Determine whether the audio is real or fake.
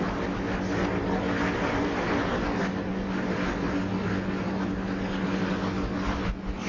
real